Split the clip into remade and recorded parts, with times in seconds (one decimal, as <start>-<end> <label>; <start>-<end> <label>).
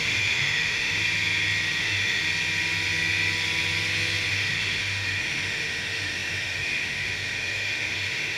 0.0-1.0 remade; 1.0-1.8 recorded; 1.8-2.2 remade; 2.2-4.3 recorded; 4.3-8.4 remade